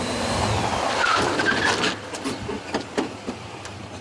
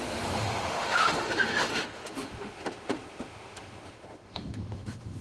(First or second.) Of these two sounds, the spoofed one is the second